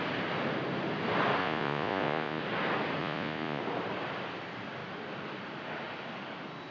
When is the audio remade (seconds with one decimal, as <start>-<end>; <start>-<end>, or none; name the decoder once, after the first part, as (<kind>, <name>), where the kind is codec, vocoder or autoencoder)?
1.4-2.4 (vocoder, Vocos); 3.0-3.6